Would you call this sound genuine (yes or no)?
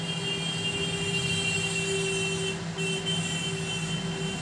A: yes